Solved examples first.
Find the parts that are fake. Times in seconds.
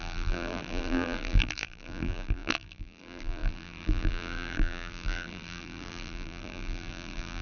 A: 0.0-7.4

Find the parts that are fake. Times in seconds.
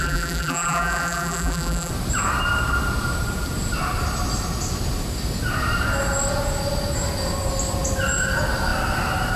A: 0.0-1.9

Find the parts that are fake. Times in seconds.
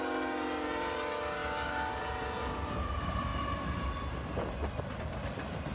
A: none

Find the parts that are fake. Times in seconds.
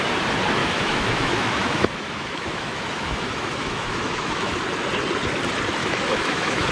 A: 0.6-4.5; 5.8-6.7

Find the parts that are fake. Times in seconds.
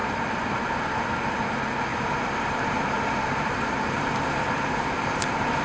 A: 0.0-0.7; 1.9-5.6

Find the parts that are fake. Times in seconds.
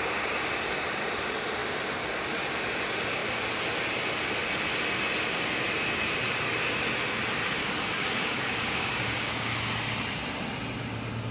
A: 7.6-9.5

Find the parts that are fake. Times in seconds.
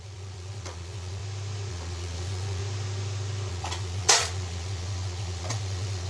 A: 0.0-1.2; 1.7-2.6; 3.5-6.1